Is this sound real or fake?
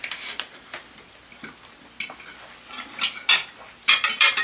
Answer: real